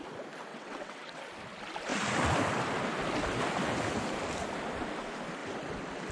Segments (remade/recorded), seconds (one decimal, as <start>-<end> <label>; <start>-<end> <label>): 0.0-0.5 recorded; 0.5-1.2 remade; 1.2-6.1 recorded